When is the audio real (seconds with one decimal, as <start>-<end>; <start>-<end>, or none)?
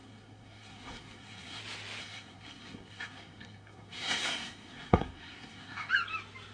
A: 1.6-2.0; 5.9-6.5